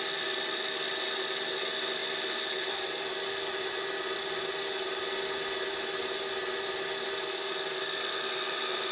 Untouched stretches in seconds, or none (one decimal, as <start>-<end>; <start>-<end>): 0.0-8.9

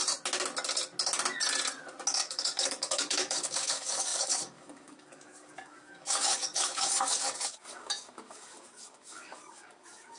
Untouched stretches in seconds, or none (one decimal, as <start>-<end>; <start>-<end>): 0.0-2.1

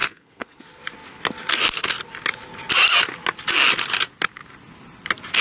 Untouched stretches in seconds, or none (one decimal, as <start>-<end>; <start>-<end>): 0.6-5.4

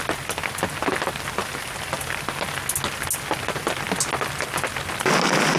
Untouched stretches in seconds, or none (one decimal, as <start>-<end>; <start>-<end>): 0.0-5.6

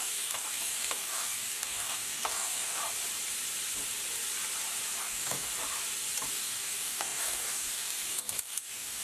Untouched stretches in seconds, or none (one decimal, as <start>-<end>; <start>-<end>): 2.8-5.0; 5.5-6.3

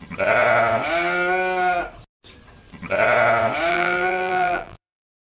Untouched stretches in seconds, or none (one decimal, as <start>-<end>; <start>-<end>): 0.0-3.7